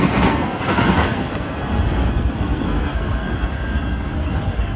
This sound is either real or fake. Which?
fake